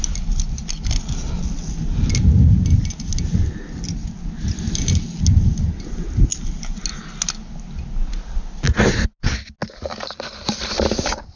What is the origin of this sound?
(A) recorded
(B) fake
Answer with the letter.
A